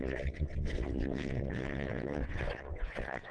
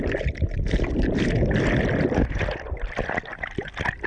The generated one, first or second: first